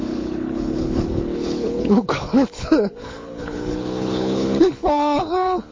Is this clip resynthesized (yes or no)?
yes